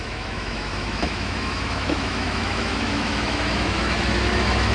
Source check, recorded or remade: remade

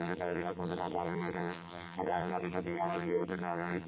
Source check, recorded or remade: remade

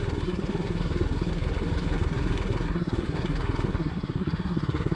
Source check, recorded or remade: remade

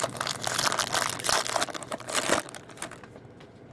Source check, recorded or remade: recorded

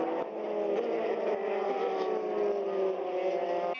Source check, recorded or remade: recorded